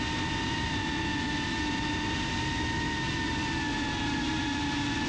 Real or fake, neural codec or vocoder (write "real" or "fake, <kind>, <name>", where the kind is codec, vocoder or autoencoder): real